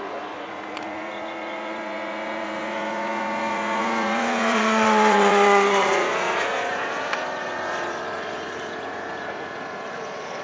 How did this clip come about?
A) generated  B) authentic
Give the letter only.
A